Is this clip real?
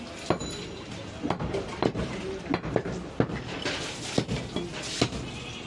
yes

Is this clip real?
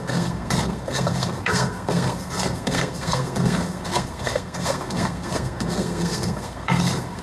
no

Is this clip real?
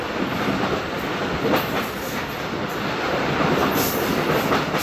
yes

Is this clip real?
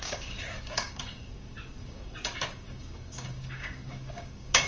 no